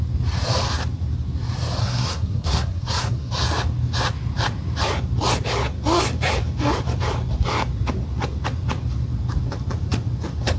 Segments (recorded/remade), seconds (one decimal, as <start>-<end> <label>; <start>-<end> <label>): 0.0-1.8 recorded; 1.8-3.3 remade; 3.3-10.6 recorded